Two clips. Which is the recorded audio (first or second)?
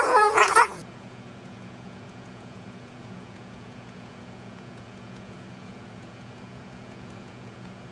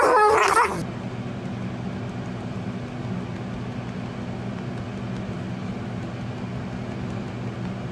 second